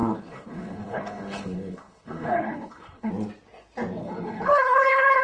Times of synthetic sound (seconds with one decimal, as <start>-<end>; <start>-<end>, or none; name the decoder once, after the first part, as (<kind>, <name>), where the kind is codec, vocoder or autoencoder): 0.0-3.1 (codec, HILCodec); 4.0-5.2